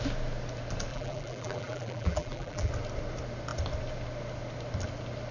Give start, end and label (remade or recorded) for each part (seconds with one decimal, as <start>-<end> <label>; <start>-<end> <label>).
0.0-0.9 recorded; 0.9-2.7 remade; 2.7-5.3 recorded